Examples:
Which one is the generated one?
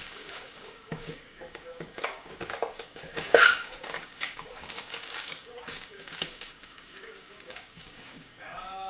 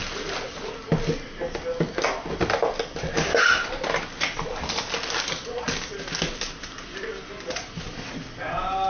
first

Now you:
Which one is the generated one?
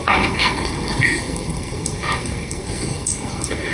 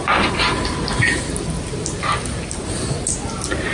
first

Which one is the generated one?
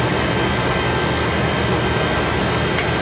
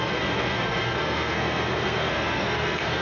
second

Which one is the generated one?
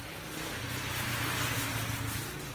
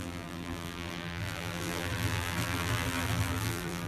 second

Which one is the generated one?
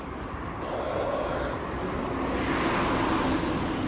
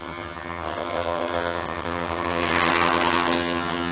second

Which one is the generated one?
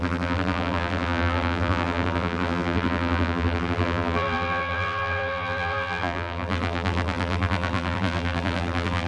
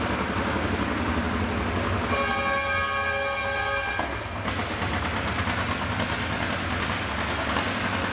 first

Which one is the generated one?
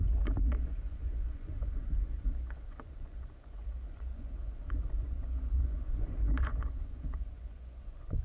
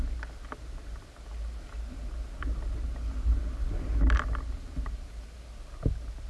first